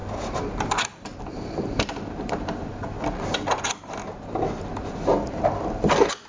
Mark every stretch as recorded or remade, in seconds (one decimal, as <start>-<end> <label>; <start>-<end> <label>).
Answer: 0.0-6.3 recorded